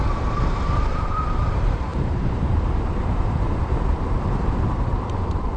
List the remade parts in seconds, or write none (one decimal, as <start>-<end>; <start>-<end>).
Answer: 0.0-5.6